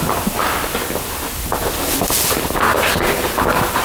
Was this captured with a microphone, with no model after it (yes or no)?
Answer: yes